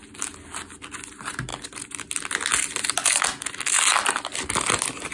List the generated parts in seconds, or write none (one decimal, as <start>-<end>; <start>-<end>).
none